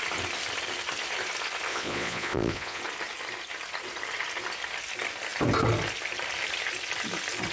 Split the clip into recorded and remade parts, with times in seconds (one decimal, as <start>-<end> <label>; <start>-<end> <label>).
0.0-1.7 recorded; 1.7-2.8 remade; 2.8-7.5 recorded